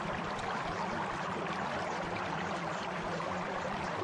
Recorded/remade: remade